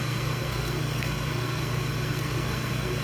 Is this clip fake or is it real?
fake